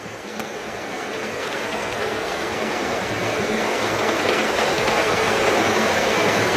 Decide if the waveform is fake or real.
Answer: fake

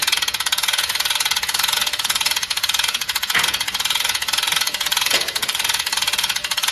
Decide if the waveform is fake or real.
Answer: fake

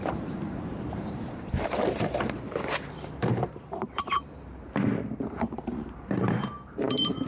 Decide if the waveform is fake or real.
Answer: fake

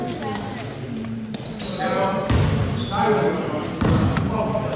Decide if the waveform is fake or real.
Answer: real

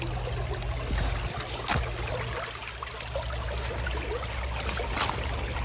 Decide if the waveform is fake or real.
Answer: real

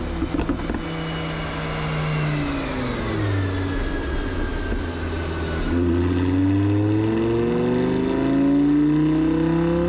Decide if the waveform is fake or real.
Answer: real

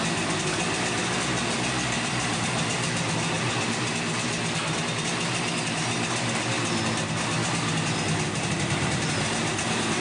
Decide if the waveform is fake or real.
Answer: real